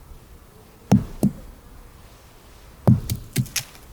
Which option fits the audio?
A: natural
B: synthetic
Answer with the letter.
A